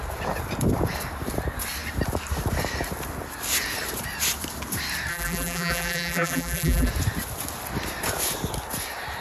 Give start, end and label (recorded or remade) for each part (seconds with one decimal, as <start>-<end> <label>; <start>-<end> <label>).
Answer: 0.0-5.1 recorded; 5.1-6.9 remade; 6.9-9.2 recorded